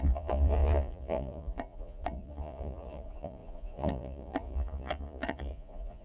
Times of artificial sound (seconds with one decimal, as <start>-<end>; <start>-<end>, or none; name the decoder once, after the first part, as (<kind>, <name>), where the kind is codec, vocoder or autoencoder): 0.0-6.0 (vocoder, Vocos)